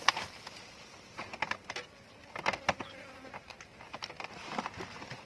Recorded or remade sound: recorded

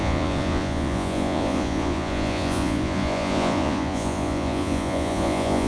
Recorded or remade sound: remade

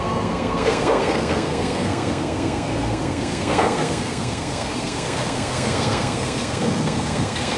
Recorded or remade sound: remade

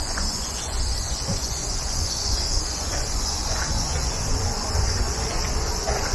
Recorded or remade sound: remade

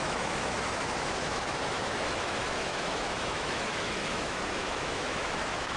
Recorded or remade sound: remade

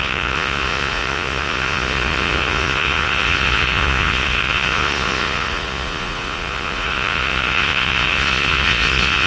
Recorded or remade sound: remade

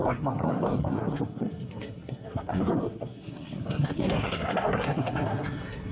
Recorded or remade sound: remade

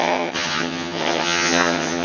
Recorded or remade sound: remade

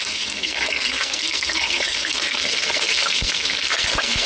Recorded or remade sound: remade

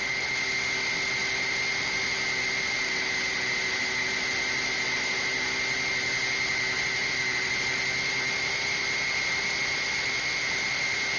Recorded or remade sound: recorded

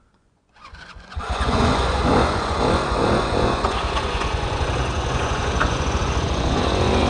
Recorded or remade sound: remade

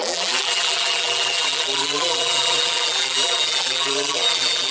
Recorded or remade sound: remade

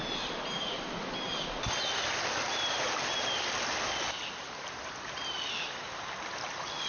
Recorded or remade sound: recorded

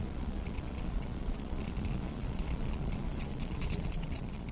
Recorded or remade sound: remade